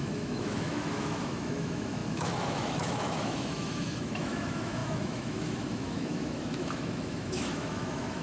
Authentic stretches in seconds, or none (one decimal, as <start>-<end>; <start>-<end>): none